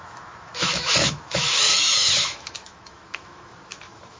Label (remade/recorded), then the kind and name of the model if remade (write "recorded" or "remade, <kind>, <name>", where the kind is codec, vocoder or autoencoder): remade, autoencoder, DAC-VAE